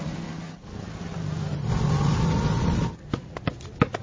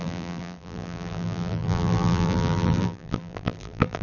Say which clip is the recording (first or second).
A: first